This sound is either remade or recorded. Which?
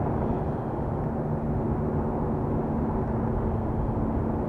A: recorded